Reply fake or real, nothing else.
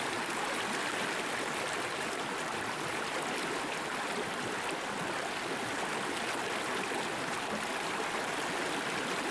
real